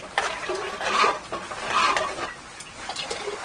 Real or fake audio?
real